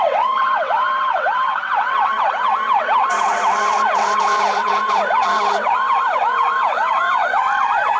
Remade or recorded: remade